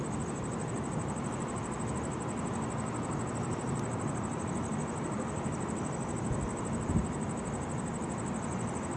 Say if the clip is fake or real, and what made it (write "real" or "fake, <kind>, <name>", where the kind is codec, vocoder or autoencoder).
real